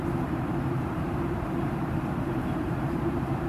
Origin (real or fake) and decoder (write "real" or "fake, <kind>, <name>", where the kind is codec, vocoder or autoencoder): fake, vocoder, BigVGAN v2